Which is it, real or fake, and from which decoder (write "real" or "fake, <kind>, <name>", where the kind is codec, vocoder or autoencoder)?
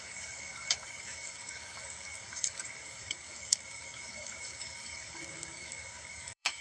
fake, codec, DAC